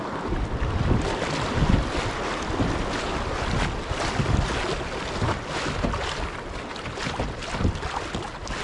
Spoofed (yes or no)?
no